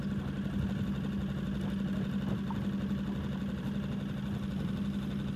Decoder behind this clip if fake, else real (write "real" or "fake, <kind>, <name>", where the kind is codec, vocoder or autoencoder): real